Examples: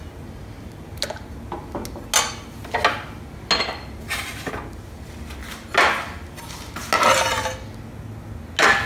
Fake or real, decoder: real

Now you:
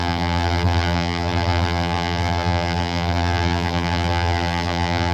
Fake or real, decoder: fake, vocoder, BigVGAN v2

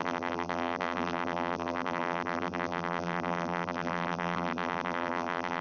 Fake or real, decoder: fake, vocoder, BigVGAN v2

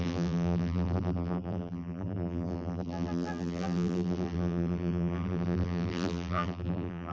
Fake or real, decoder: fake, vocoder, BigVGAN v2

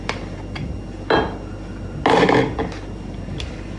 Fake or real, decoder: real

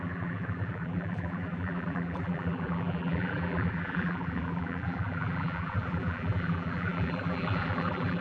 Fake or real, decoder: fake, vocoder, BigVGAN v2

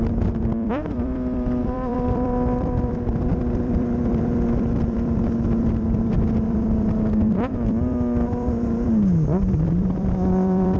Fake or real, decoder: fake, vocoder, BigVGAN v2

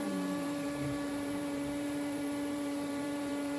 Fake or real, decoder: fake, vocoder, BigVGAN v2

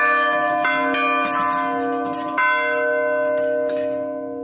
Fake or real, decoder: real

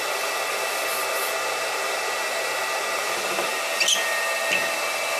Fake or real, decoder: real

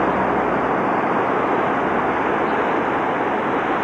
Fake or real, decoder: real